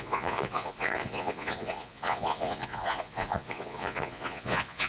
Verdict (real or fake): fake